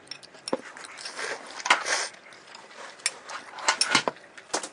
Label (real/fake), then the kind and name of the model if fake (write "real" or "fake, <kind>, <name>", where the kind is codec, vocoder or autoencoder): real